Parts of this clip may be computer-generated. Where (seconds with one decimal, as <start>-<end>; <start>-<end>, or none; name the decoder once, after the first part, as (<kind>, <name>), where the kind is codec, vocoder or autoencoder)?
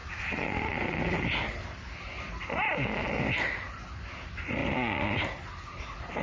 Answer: none